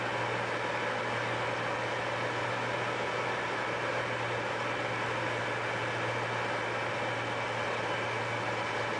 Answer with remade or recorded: recorded